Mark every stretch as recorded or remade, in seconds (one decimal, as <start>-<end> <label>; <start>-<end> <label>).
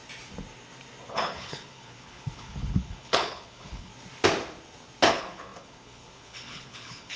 0.0-1.1 recorded; 1.1-3.9 remade; 3.9-5.1 recorded; 5.1-7.2 remade